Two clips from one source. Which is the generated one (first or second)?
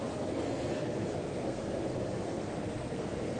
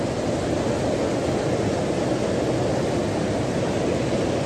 first